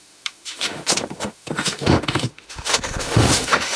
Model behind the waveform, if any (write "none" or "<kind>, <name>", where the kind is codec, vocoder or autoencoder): autoencoder, DAC-VAE